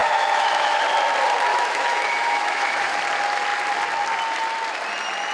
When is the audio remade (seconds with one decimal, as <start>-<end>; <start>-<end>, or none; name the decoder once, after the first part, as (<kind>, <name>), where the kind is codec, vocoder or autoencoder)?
0.0-0.8 (autoencoder, DAC-VAE); 1.5-3.0